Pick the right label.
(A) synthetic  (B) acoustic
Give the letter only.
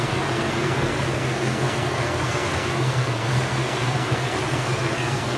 A